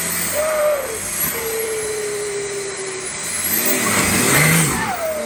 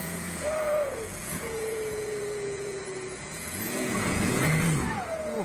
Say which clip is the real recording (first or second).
first